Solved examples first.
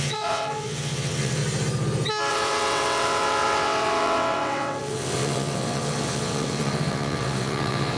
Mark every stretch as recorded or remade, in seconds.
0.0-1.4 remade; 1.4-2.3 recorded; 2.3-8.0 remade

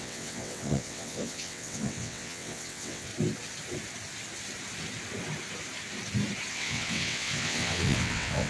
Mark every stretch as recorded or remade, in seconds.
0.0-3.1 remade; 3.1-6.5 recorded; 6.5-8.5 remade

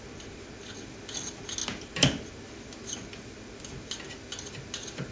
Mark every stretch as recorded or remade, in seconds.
0.0-5.1 recorded

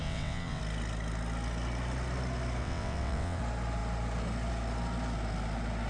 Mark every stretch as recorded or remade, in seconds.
0.0-0.6 remade; 0.6-2.6 recorded; 2.6-3.4 remade; 3.4-5.9 recorded

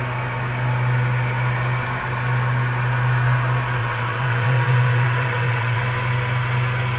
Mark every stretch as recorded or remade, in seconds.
0.0-3.8 recorded; 3.8-5.8 remade; 5.8-7.0 recorded